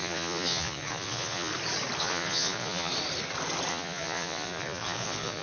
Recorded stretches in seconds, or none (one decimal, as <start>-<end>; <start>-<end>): 1.5-2.0; 2.9-3.7

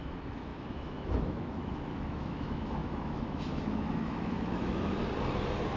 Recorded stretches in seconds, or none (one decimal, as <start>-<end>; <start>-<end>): 5.0-5.8

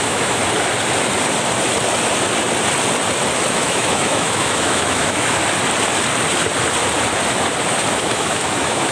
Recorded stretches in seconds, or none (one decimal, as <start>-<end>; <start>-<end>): 0.4-3.5; 5.4-7.9

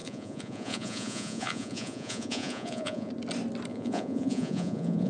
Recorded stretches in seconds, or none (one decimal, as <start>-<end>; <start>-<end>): 3.1-3.7